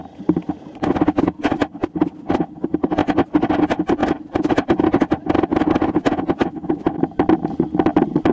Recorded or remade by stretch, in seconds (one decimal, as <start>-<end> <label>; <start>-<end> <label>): 0.0-4.0 recorded; 4.0-5.3 remade; 5.3-8.3 recorded